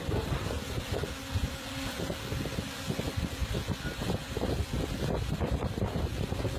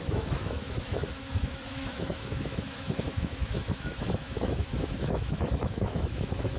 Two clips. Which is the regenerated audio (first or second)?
second